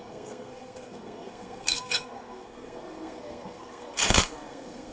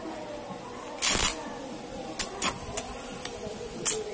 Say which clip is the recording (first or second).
second